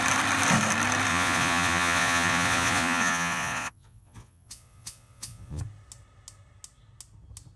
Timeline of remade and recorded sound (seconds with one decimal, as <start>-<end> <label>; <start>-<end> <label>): 0.0-1.1 recorded; 1.1-5.6 remade; 5.6-7.6 recorded